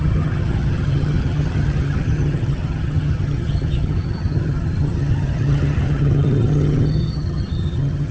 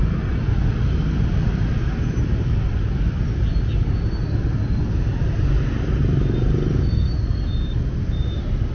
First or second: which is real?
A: second